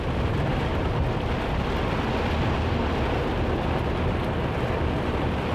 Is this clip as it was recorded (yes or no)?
yes